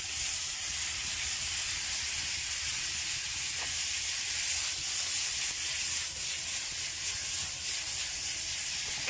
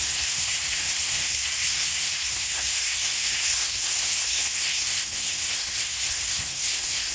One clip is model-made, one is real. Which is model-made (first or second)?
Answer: second